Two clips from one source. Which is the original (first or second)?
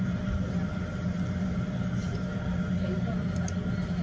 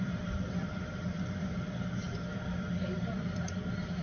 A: first